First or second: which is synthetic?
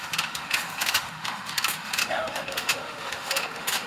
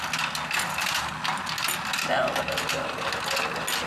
first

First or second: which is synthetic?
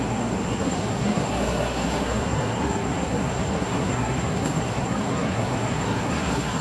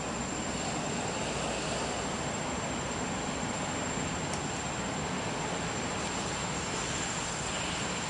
first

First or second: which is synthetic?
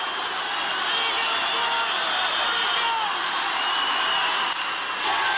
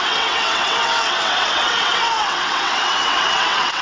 second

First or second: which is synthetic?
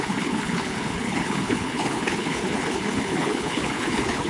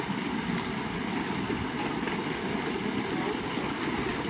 first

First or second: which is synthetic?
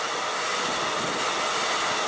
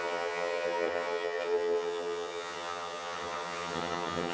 second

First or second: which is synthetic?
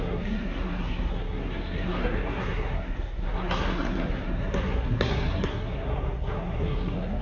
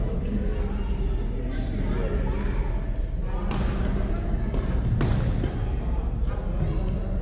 first